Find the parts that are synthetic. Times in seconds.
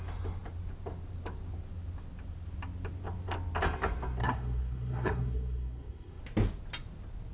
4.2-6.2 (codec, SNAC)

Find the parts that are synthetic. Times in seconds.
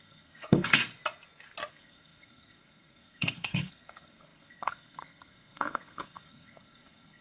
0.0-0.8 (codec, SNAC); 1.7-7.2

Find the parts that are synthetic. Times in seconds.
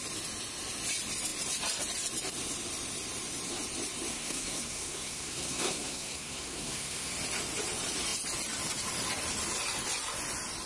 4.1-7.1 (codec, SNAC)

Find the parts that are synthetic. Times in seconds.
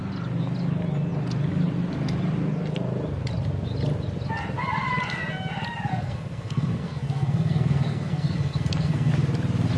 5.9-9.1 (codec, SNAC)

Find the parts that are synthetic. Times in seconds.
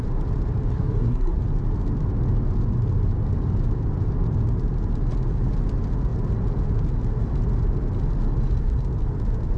0.7-1.4 (codec, SNAC)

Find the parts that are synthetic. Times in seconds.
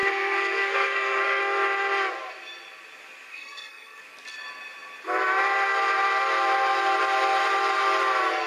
0.0-1.4 (codec, SNAC); 3.3-4.0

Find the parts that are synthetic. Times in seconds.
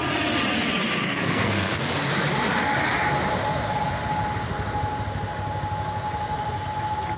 1.0-1.8 (codec, SNAC)